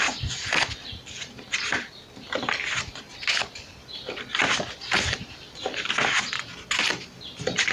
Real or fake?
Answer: real